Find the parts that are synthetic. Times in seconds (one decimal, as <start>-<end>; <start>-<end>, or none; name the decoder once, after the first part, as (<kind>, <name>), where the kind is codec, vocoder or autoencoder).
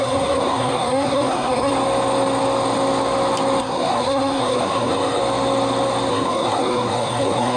0.0-1.7 (codec, SNAC); 3.6-5.2; 6.1-7.6